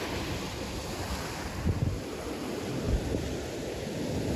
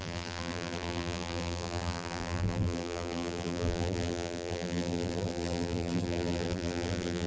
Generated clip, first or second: second